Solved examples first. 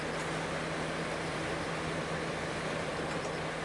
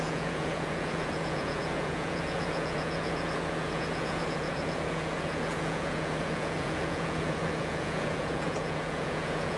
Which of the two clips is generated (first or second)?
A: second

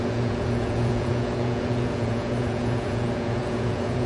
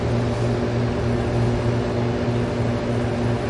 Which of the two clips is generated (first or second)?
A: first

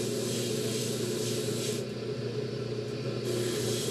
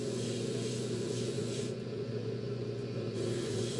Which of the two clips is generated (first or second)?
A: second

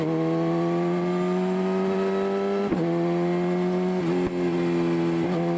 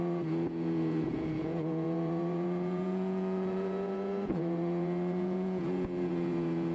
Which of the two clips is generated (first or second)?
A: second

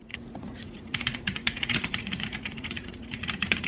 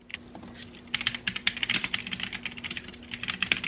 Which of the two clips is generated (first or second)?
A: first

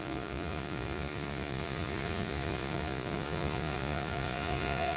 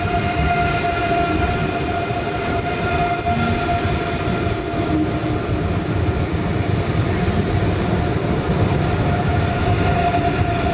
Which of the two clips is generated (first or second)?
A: first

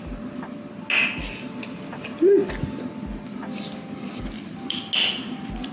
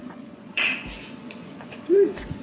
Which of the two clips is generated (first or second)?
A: second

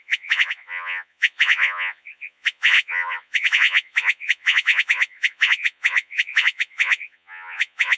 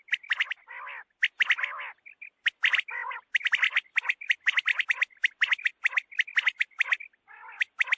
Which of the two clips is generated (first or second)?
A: first